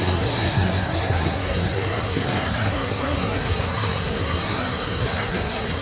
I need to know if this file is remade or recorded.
remade